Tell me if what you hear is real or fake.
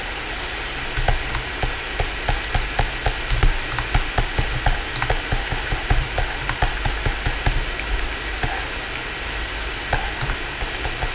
real